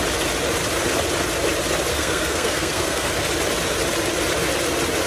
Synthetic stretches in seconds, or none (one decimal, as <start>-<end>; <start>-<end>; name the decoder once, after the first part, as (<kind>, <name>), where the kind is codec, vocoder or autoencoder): 1.9-3.1 (codec, SNAC)

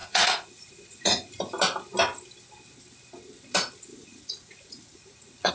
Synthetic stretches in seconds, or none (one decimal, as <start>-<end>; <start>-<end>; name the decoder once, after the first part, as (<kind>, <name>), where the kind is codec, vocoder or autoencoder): 0.0-1.3 (vocoder, Vocos); 3.9-5.5